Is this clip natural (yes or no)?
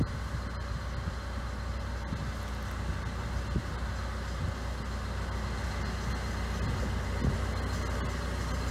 yes